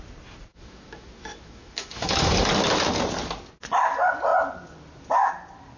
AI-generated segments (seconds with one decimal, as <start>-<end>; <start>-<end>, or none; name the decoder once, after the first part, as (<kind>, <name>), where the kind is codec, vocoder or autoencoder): 0.5-2.3 (autoencoder, DAC-VAE)